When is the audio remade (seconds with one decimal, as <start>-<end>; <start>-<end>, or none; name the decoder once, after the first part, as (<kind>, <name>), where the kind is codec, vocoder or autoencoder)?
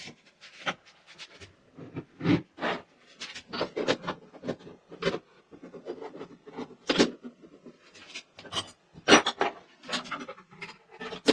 none